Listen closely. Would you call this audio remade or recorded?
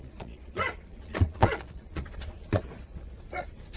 remade